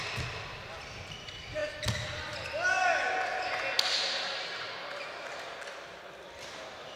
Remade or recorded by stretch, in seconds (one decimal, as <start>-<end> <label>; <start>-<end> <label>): 0.0-7.0 recorded

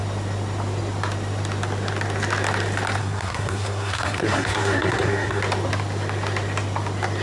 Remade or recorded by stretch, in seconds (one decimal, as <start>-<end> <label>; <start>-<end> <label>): 0.0-3.0 recorded; 3.0-5.4 remade; 5.4-7.2 recorded

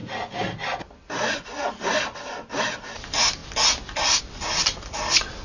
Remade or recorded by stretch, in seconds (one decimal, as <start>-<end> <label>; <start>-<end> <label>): 0.0-5.4 recorded

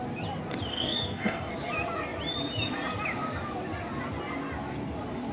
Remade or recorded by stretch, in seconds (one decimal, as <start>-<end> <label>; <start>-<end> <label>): 0.0-0.7 recorded; 0.7-1.5 remade; 1.5-5.3 recorded

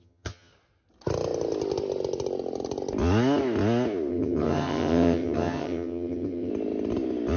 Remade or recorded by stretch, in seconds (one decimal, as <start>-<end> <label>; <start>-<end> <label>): 0.0-0.5 remade; 0.5-4.1 recorded; 4.1-6.5 remade; 6.5-7.4 recorded

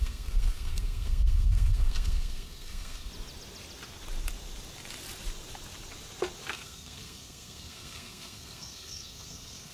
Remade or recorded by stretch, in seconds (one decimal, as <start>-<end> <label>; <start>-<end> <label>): 0.0-3.1 remade; 3.1-6.5 recorded; 6.5-9.7 remade